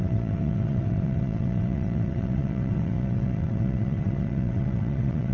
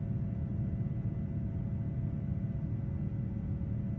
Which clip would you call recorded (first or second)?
second